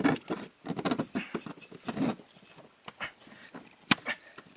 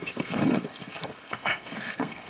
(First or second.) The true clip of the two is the first